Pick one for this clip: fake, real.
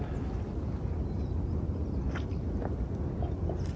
real